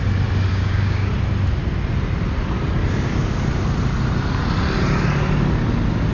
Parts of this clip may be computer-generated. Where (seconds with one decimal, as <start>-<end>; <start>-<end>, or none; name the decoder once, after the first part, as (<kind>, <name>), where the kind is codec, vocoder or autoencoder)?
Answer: 0.5-1.1 (codec, DAC)